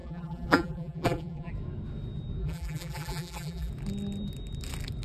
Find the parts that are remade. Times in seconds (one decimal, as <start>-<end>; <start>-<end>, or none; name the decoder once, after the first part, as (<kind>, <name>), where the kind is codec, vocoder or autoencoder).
0.0-1.5 (vocoder, BigVGAN v2); 2.4-3.7